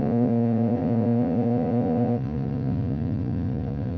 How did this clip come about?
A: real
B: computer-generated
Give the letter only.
B